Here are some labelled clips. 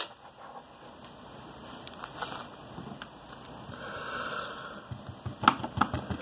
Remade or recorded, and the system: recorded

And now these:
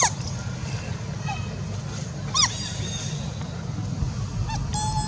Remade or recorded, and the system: remade, vocoder, BigVGAN v2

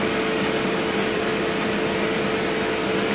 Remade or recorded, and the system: remade, vocoder, BigVGAN v2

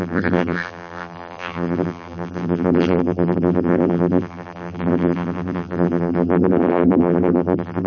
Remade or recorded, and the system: remade, vocoder, BigVGAN v2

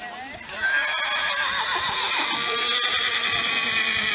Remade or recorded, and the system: recorded